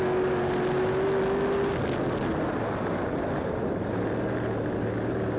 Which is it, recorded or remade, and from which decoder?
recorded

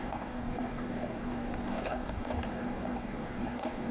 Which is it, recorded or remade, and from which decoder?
remade, codec, DAC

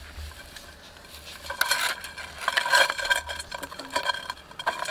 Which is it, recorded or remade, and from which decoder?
recorded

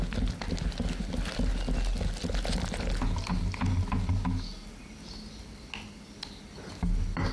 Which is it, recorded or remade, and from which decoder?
recorded